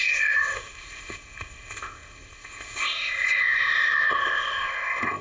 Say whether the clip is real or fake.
fake